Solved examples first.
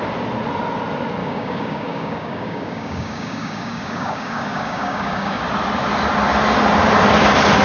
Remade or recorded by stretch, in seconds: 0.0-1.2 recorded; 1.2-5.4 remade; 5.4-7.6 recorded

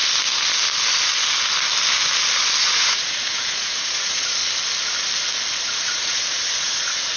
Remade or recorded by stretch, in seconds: 0.0-2.6 recorded; 2.6-4.4 remade; 4.4-5.6 recorded; 5.6-7.2 remade

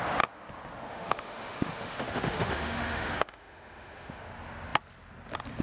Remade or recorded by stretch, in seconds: 0.0-0.9 recorded; 0.9-4.3 remade; 4.3-5.6 recorded